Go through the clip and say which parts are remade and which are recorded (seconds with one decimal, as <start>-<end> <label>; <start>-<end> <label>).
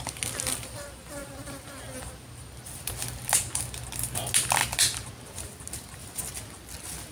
0.0-7.1 recorded